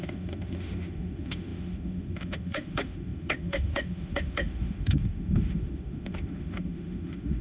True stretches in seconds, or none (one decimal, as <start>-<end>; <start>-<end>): none